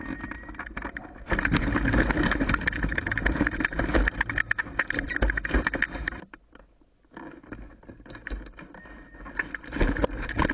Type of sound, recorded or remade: recorded